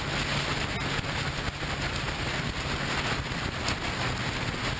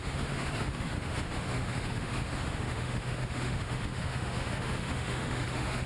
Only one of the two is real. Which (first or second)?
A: first